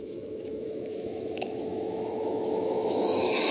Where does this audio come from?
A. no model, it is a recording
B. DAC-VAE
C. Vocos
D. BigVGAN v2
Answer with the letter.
B